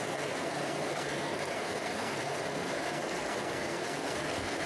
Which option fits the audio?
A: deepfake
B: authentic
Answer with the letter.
A